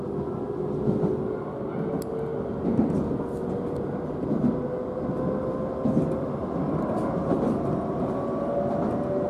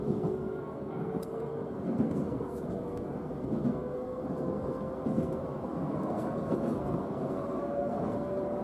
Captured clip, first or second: first